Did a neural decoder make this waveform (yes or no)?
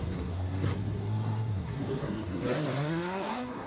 yes